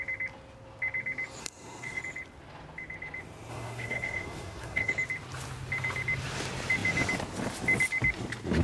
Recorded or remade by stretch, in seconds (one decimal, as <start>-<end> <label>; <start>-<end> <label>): 0.0-1.4 recorded; 1.4-2.0 remade; 2.0-3.5 recorded; 3.5-4.9 remade; 4.9-8.6 recorded